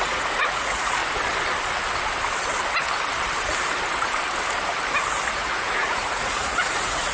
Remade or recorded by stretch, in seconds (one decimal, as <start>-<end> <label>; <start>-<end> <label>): 0.0-1.0 remade; 1.0-5.3 recorded; 5.3-7.1 remade